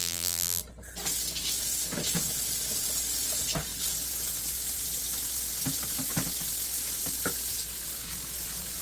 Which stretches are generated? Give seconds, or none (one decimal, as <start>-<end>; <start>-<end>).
0.0-0.6